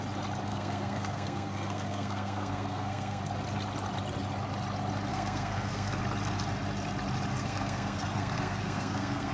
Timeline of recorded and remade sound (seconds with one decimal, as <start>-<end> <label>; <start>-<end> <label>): 0.0-0.5 recorded; 0.5-3.2 remade; 3.2-5.1 recorded; 5.1-6.0 remade; 6.0-7.4 recorded; 7.4-9.3 remade